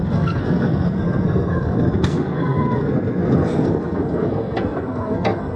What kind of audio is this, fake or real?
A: fake